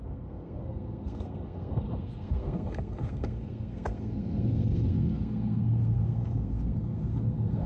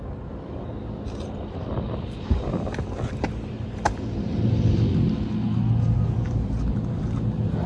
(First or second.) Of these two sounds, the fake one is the first